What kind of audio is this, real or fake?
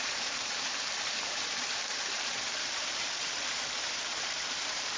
fake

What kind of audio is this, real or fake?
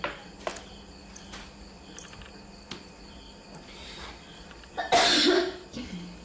real